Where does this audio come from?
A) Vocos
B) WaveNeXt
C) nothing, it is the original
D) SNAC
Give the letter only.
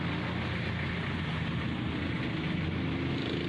C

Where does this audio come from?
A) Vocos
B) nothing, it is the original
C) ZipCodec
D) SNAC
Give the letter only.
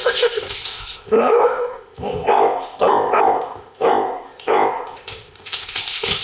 C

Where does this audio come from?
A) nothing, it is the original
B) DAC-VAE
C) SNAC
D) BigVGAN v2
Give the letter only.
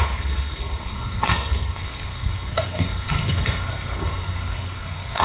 C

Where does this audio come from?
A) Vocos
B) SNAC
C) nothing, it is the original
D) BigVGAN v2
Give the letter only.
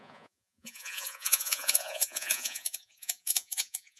A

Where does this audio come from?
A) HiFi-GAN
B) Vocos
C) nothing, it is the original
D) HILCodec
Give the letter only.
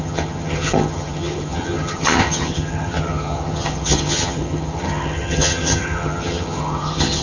A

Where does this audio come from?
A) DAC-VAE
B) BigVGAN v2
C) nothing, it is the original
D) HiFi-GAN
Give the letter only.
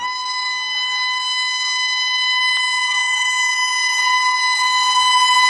C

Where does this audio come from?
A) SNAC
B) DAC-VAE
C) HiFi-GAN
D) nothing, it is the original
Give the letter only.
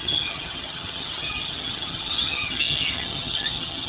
C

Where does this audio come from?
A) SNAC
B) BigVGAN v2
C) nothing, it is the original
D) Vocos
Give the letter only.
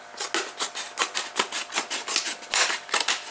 C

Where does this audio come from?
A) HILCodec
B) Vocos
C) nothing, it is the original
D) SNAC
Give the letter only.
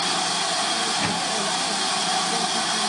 C